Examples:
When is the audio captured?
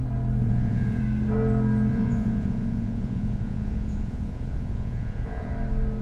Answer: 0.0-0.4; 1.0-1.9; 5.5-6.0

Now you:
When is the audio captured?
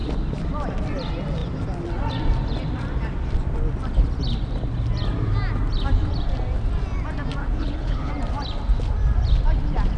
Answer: 0.0-7.4; 8.1-10.0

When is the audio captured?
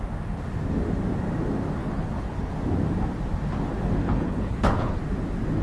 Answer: 0.0-1.8; 2.5-4.0; 5.0-5.6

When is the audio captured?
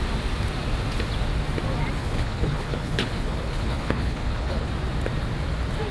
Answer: 0.0-2.0; 4.7-5.9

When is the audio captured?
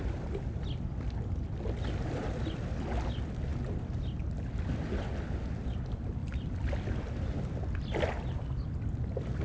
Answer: 0.0-9.4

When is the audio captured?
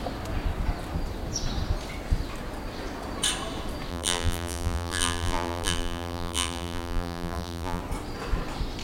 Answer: 0.0-3.9; 7.8-8.8